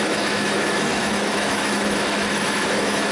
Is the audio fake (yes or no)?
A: yes